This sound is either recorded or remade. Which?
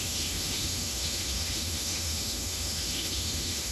remade